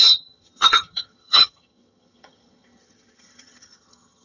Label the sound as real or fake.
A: fake